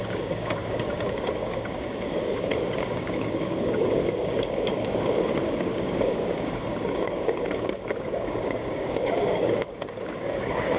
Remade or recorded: remade